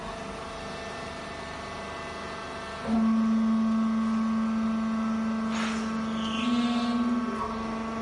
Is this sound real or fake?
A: real